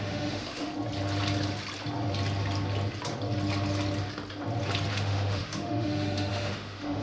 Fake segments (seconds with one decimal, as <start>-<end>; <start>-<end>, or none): 0.0-0.7; 4.9-7.0